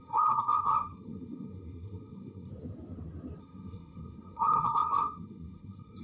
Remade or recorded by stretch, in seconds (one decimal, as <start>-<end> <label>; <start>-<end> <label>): 0.0-2.5 remade; 2.5-3.4 recorded; 3.4-6.0 remade